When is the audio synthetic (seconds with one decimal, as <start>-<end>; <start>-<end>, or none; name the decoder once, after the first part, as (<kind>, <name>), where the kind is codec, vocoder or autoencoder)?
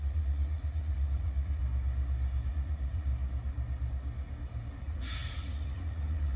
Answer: 0.0-1.6 (vocoder, Vocos); 2.5-3.1; 4.8-6.4